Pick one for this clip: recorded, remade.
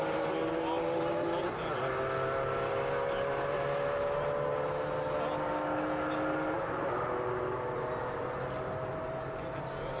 recorded